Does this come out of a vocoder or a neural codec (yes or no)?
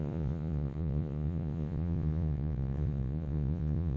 yes